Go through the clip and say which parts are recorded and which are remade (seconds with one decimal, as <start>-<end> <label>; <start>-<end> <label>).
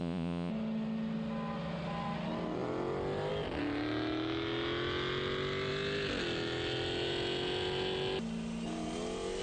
0.0-0.5 remade; 0.5-9.4 recorded